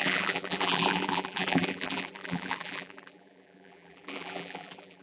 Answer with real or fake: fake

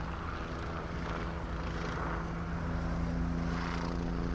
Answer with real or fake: real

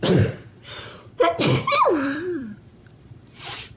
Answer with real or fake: fake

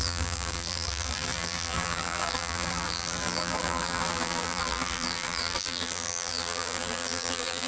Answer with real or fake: fake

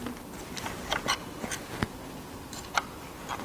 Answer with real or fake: real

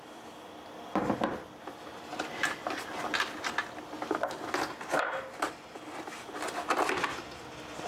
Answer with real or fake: real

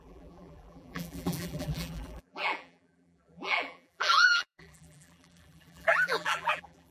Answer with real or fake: fake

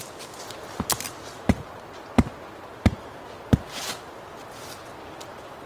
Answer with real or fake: real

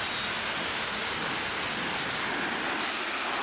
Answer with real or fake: real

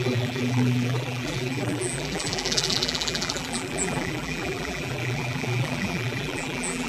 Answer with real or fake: fake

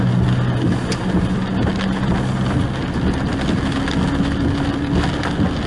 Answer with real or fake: real